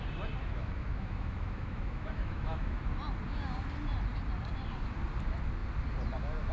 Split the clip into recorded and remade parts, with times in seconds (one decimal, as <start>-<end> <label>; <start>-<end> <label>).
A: 0.0-0.4 recorded; 0.4-2.8 remade; 2.8-6.5 recorded